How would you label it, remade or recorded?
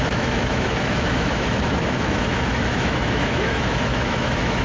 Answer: remade